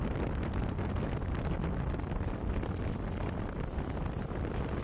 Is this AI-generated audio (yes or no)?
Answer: no